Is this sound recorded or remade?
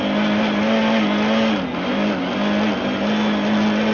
recorded